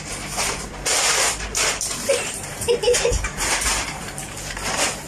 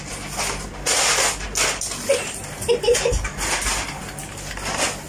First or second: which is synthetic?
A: first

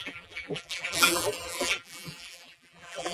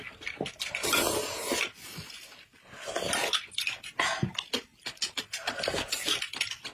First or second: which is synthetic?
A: first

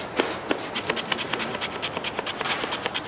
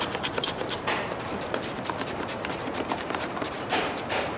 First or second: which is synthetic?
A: second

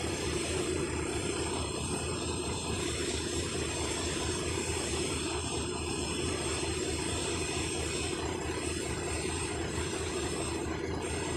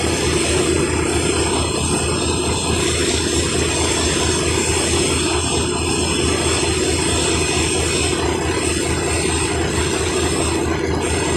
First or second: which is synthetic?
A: first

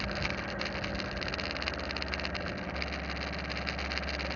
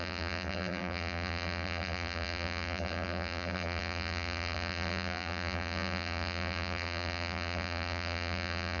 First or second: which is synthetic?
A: second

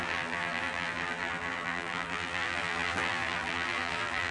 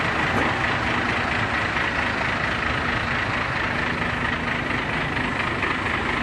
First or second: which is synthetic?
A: first